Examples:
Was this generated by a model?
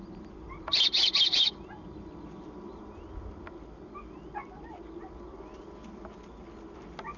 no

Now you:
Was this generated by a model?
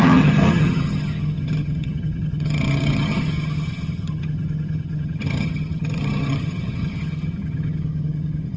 yes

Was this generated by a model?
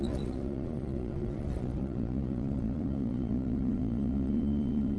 yes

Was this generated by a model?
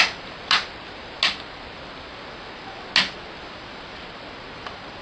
no